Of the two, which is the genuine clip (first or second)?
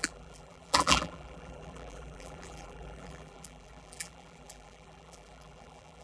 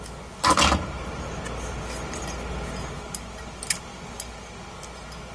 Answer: second